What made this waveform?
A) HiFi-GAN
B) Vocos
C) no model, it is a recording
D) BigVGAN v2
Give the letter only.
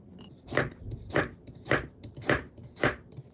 D